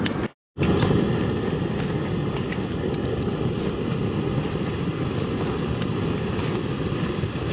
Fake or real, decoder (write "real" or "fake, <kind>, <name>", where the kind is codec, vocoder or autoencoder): real